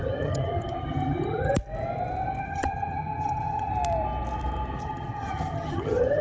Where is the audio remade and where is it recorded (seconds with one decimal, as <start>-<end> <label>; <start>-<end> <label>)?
0.0-1.5 remade; 1.5-2.4 recorded; 2.4-3.7 remade; 3.7-4.8 recorded; 4.8-6.2 remade